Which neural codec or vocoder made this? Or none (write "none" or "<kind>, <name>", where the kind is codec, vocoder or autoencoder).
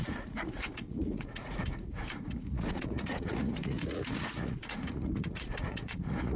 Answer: vocoder, Vocos